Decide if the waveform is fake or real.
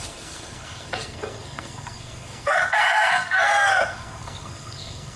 fake